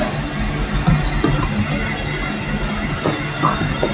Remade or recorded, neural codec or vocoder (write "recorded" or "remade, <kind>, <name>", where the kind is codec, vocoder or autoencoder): recorded